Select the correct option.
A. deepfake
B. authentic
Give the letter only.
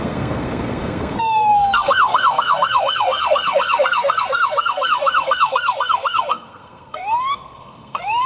A